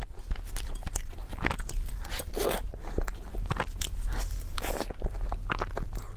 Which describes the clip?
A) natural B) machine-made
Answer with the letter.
A